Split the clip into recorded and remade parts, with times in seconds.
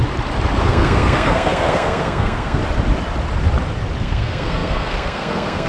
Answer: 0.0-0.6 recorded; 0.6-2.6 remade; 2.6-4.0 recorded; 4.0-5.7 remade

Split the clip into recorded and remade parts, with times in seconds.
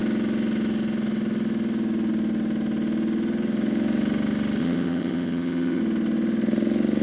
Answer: 0.0-4.6 recorded; 4.6-5.8 remade; 5.8-7.0 recorded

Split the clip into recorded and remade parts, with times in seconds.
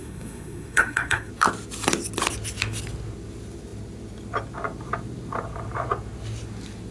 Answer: 0.0-1.3 remade; 1.3-6.9 recorded